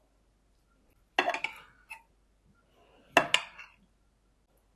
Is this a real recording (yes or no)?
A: yes